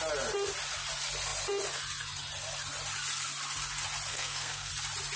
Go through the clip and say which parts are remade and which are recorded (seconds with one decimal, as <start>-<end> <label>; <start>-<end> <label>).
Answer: 0.0-4.1 recorded; 4.1-4.7 remade; 4.7-5.2 recorded